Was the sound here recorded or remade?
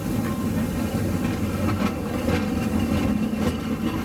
recorded